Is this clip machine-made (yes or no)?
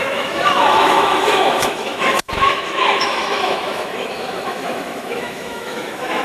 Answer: yes